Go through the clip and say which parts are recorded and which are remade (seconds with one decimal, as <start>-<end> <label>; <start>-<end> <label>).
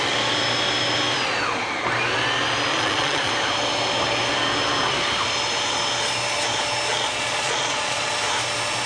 0.0-2.7 recorded; 2.7-3.3 remade; 3.3-6.9 recorded; 6.9-8.1 remade; 8.1-8.9 recorded